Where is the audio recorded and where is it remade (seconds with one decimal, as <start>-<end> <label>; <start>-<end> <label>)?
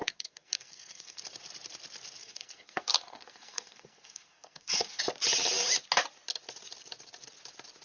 0.0-1.2 remade; 1.2-2.2 recorded; 2.2-5.0 remade; 5.0-7.8 recorded